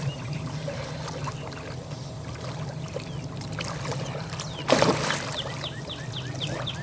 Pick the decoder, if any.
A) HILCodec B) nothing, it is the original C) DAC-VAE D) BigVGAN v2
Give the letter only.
B